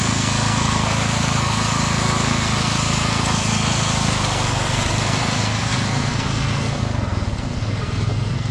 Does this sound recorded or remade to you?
remade